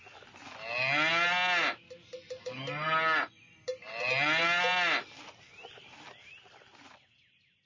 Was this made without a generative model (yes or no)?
yes